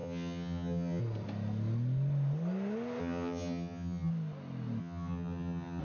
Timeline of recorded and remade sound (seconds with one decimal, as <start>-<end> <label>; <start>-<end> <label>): 0.0-1.0 remade; 1.0-3.0 recorded; 3.0-4.1 remade; 4.1-4.8 recorded; 4.8-5.8 remade